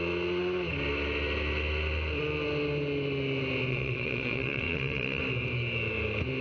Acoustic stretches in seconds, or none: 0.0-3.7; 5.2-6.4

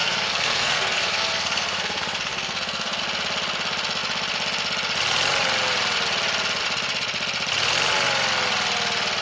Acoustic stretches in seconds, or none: 3.0-9.2

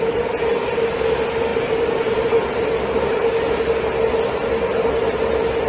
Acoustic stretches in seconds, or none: 0.0-5.7

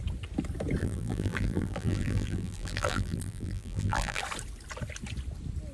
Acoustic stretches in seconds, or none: 0.0-0.8; 4.2-5.7

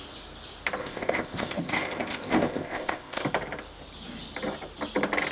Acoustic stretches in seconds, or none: 0.0-0.8; 3.2-5.3